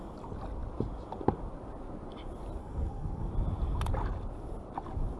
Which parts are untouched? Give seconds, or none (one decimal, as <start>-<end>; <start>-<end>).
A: 0.0-2.6; 3.3-5.2